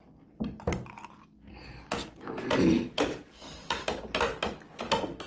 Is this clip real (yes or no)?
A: yes